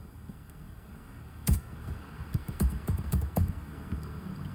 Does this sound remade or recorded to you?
remade